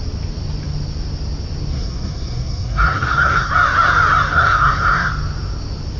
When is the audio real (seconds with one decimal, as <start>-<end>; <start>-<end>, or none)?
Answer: 0.0-1.7; 3.5-4.3; 5.1-6.0